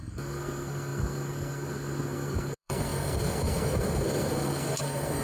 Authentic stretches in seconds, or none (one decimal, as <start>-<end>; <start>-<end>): none